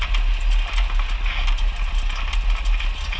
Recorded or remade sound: recorded